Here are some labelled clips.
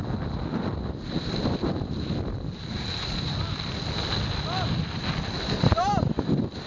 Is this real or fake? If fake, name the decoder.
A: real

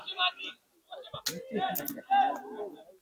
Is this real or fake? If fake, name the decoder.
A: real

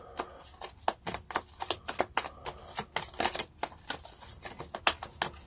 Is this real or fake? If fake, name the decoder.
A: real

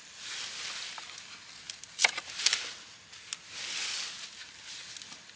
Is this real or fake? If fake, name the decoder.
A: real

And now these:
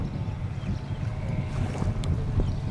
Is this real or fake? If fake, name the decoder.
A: real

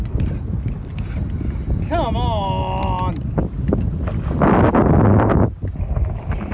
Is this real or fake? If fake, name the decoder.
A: real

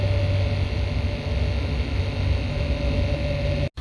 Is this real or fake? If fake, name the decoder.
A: real